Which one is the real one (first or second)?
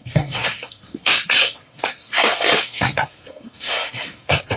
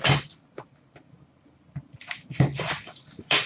second